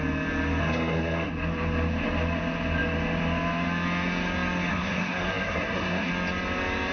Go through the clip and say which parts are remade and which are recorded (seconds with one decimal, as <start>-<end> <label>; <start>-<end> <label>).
0.0-0.6 recorded; 0.6-1.3 remade; 1.3-4.7 recorded; 4.7-6.1 remade; 6.1-6.9 recorded